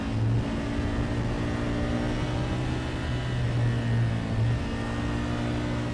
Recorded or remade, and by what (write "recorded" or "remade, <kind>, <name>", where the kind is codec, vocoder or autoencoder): recorded